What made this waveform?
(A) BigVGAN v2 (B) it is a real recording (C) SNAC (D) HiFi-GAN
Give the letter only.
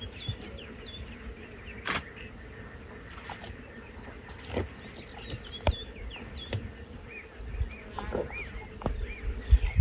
B